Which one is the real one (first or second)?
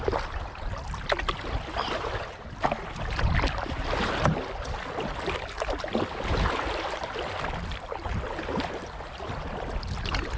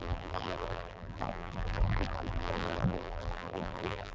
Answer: first